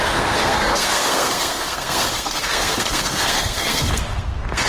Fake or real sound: fake